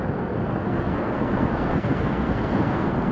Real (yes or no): no